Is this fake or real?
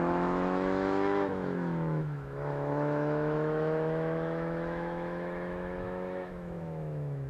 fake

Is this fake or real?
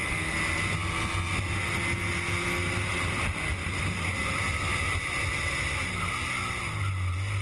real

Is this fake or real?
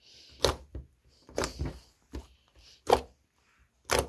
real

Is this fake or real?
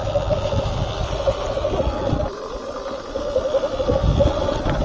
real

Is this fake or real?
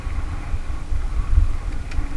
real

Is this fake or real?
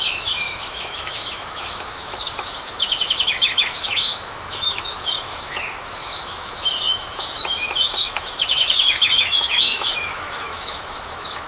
fake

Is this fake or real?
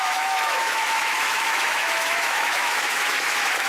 fake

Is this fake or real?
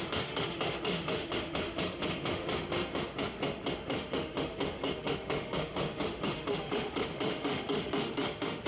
fake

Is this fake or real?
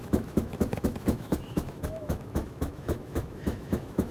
fake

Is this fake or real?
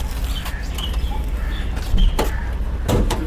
real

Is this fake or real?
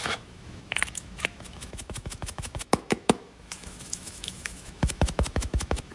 fake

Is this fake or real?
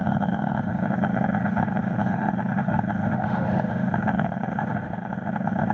fake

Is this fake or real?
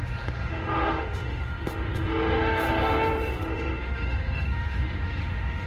fake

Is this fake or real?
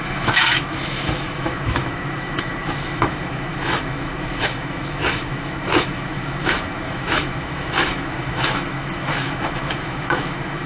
fake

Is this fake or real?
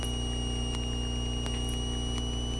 real